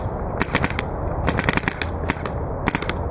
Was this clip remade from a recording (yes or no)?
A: no